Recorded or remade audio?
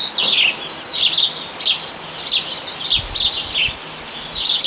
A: recorded